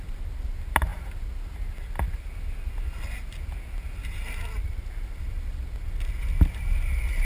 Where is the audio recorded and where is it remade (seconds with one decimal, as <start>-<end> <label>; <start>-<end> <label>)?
0.0-7.2 recorded